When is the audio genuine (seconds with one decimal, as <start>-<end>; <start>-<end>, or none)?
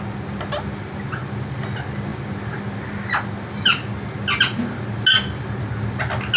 0.0-6.4